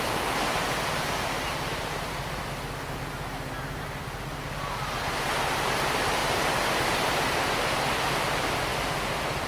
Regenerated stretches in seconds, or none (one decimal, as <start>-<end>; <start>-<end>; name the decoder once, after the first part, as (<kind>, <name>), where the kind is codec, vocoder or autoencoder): 0.0-2.4 (vocoder, BigVGAN v2); 5.2-9.5